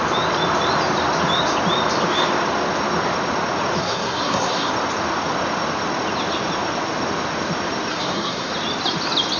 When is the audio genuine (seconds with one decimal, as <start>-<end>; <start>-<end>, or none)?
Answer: 0.0-3.8; 4.7-7.9; 8.5-9.4